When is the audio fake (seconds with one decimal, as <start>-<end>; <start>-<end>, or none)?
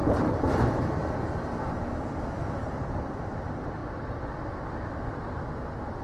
0.0-3.4; 3.8-4.5